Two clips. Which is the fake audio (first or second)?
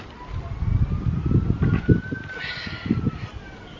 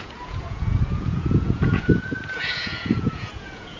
second